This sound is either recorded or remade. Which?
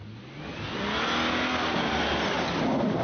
recorded